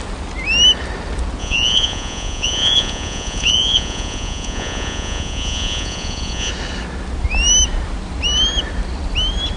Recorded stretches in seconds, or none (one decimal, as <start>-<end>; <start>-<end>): 0.0-1.4; 6.5-9.6

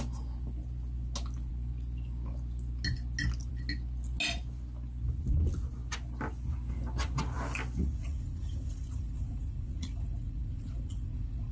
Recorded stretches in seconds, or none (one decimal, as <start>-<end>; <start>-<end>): 0.0-7.8

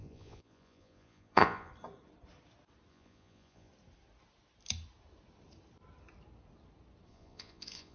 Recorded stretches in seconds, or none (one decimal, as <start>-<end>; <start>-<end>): 1.7-2.9; 3.7-7.1

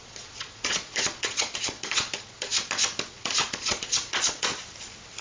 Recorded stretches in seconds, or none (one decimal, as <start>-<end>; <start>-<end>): 2.5-3.1; 4.5-5.2

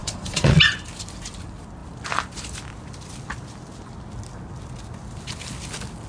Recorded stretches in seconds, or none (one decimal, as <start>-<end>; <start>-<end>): 0.6-6.1

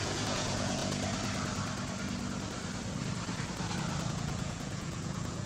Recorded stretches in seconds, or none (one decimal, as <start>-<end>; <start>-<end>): 0.8-4.1

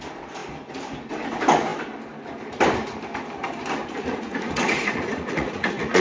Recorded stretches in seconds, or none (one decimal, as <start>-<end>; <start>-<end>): 0.0-3.8